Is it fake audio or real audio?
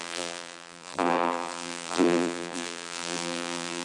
fake